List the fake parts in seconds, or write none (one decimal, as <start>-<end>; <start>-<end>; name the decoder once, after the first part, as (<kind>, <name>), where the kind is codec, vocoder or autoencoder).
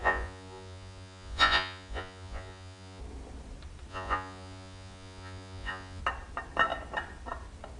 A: 0.0-3.0 (vocoder, Vocos); 3.9-6.0